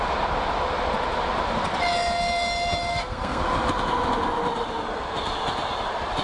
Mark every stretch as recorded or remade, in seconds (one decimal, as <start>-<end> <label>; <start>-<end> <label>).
0.0-2.9 recorded; 2.9-3.4 remade; 3.4-6.2 recorded